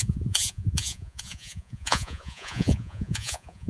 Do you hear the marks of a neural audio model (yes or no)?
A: yes